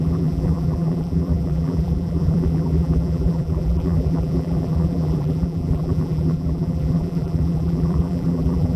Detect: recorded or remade remade